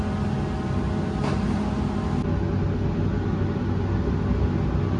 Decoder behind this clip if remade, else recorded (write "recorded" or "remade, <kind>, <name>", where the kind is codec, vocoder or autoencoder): recorded